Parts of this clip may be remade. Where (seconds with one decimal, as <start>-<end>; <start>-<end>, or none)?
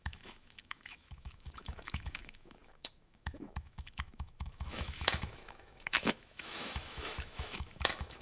0.0-8.2